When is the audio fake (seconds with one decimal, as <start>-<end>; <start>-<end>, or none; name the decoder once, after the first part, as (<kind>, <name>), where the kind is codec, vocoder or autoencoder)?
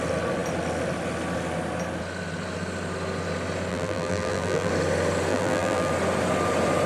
3.7-4.7 (vocoder, BigVGAN v2); 5.3-5.9